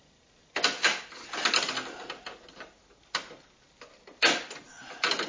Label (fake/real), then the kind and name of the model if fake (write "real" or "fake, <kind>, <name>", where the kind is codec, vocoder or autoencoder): real